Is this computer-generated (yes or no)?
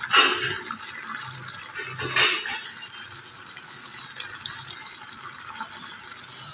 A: no